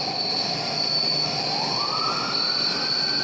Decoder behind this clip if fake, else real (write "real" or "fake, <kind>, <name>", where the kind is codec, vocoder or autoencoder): real